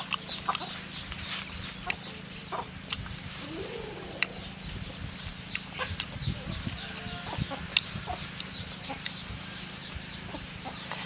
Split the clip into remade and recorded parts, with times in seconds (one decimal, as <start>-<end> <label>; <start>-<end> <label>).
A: 0.0-2.4 recorded; 2.4-4.2 remade; 4.2-5.3 recorded; 5.3-6.5 remade; 6.5-7.7 recorded; 7.7-11.1 remade